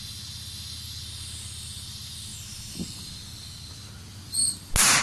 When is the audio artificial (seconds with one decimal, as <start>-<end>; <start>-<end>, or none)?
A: none